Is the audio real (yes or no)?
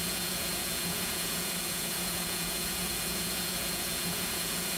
no